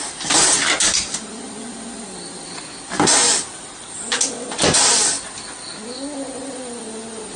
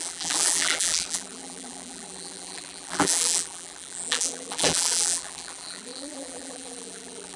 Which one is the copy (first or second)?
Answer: second